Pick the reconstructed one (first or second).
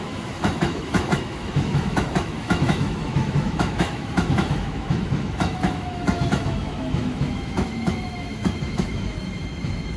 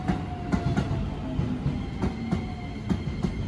first